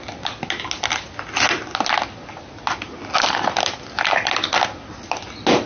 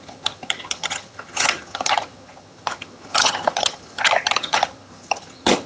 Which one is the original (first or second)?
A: first